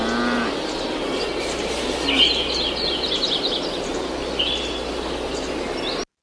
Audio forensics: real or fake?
real